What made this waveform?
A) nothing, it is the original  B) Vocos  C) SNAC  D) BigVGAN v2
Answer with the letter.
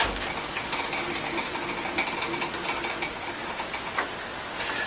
A